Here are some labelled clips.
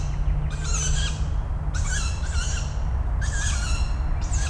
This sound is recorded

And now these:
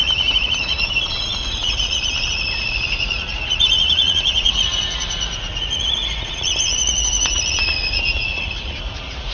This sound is remade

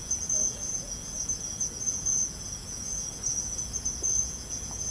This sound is remade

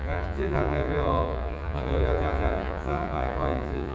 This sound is remade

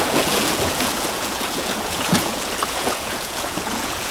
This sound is remade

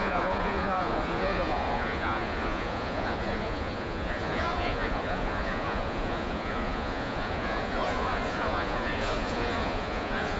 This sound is remade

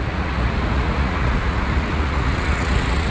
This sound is remade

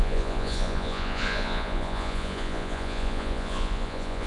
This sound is remade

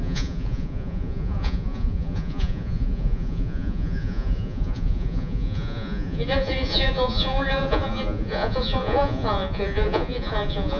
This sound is remade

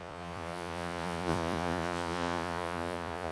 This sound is remade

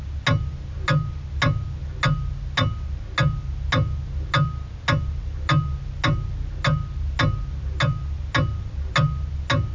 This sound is recorded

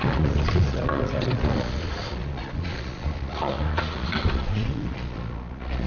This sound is remade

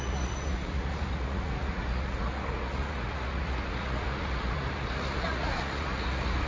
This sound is remade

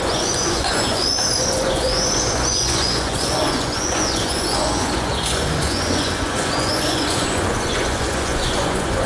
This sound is remade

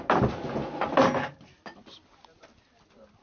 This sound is recorded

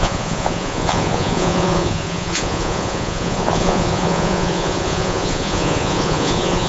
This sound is remade